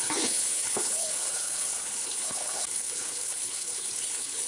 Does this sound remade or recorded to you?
remade